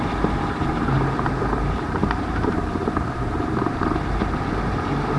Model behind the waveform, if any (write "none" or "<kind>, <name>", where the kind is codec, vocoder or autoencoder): vocoder, BigVGAN v2